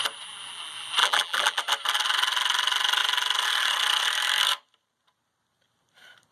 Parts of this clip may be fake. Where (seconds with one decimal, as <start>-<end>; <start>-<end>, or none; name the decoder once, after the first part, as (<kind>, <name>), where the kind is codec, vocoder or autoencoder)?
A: 1.0-1.6 (vocoder, BigVGAN v2)